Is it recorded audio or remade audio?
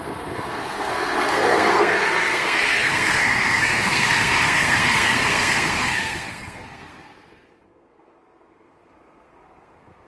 remade